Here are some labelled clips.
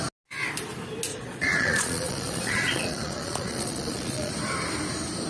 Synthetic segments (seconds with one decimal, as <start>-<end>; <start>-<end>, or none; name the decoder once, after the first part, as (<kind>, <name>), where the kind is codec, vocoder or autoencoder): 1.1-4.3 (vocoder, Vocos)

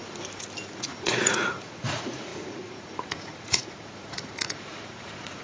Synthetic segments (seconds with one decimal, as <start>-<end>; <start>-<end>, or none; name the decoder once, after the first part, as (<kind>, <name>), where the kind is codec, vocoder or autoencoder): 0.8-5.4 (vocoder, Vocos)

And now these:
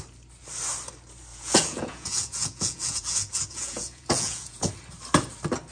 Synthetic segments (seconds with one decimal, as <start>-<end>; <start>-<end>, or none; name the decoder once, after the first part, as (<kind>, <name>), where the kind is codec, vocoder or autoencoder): 1.3-4.7 (vocoder, Vocos)